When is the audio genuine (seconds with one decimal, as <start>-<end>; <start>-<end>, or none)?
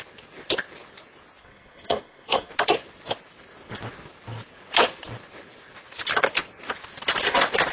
0.0-1.4; 2.5-7.7